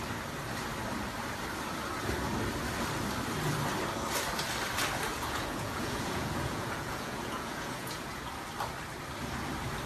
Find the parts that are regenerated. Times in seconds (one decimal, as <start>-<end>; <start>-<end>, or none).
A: 5.1-8.3